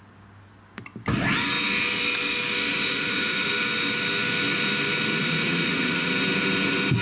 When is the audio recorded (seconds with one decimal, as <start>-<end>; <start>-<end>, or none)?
0.0-2.7; 3.5-5.2; 6.1-7.0